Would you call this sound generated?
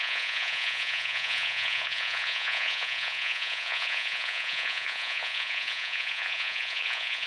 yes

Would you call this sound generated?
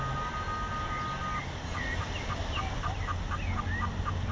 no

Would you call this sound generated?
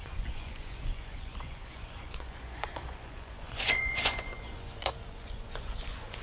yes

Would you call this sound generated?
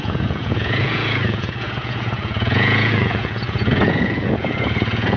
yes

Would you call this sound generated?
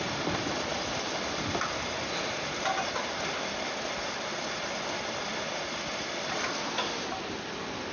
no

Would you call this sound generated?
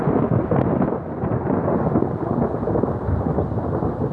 no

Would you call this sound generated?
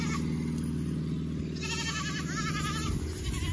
no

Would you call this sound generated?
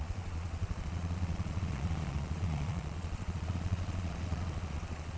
yes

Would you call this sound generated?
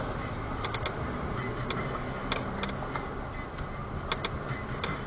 no